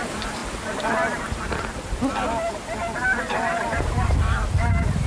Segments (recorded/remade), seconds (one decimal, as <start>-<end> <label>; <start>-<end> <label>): 0.0-5.1 recorded